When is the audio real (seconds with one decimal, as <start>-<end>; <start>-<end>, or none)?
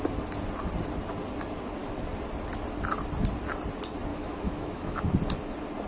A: 0.0-4.1; 5.0-5.9